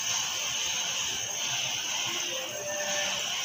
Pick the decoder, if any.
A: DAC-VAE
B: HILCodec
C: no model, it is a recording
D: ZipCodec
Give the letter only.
C